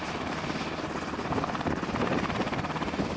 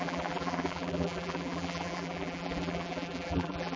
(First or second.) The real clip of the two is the first